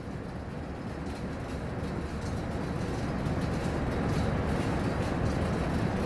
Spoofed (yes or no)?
no